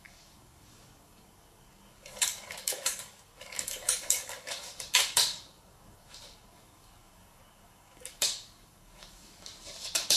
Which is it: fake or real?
fake